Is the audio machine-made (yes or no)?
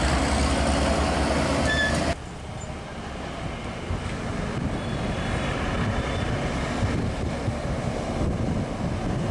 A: no